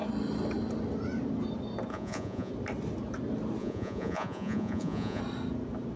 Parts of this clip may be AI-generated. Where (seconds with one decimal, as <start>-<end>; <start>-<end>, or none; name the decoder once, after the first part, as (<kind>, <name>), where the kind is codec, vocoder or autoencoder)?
1.9-2.5 (vocoder, Vocos); 3.6-5.2